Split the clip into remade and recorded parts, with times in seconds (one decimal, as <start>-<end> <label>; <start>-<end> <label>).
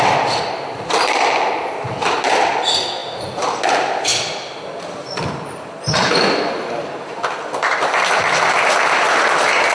0.0-9.7 recorded